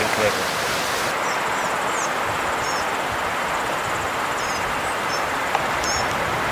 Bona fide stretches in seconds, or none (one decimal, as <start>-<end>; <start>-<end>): 0.0-6.5